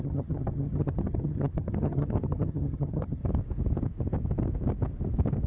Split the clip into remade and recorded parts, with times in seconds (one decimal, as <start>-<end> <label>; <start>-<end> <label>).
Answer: 0.0-3.2 remade; 3.2-5.5 recorded

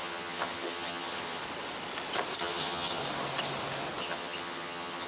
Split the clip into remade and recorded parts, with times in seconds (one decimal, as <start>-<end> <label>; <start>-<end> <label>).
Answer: 0.0-1.4 remade; 1.4-2.4 recorded; 2.4-3.0 remade; 3.0-4.0 recorded; 4.0-5.1 remade

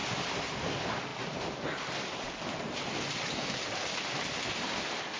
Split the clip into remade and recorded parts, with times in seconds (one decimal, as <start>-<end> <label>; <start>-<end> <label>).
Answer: 0.0-5.2 recorded